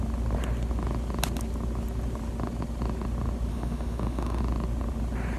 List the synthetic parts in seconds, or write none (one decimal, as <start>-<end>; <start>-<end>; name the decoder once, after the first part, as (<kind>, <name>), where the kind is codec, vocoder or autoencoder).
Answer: 3.5-4.4 (autoencoder, DAC-VAE)